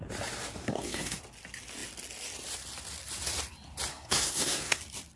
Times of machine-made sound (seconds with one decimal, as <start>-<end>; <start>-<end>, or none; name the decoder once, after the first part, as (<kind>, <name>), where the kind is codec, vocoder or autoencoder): 0.6-1.2 (codec, SNAC); 3.9-4.8